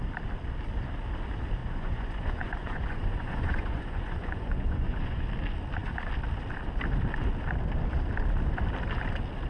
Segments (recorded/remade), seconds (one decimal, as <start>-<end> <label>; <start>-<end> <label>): 0.0-1.6 recorded; 1.6-5.2 remade; 5.2-9.5 recorded